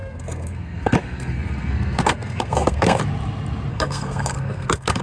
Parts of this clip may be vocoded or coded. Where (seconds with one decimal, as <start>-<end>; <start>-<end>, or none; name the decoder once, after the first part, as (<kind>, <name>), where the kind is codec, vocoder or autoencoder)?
0.0-3.0 (codec, SNAC); 3.7-5.0